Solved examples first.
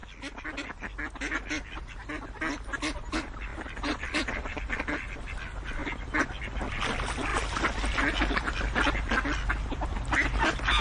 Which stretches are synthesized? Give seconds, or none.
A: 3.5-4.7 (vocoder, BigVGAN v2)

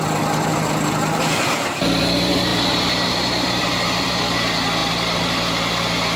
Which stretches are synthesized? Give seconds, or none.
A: 0.5-2.0 (vocoder, BigVGAN v2); 2.5-4.2

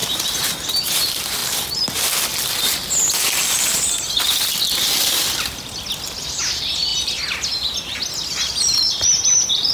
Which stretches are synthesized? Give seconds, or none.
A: 0.0-1.0 (vocoder, BigVGAN v2)